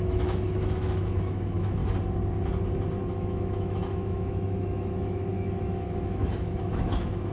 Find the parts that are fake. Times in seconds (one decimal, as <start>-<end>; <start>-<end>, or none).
0.0-1.8; 3.1-7.3